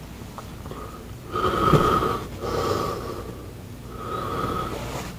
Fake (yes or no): no